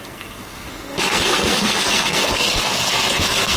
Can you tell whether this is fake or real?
fake